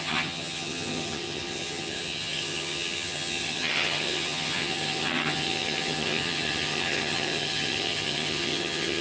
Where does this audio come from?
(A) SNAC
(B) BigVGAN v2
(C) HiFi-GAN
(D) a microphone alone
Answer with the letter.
C